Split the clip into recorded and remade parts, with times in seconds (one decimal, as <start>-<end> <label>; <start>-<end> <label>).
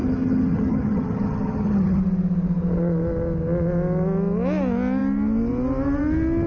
0.0-2.0 remade; 2.0-6.5 recorded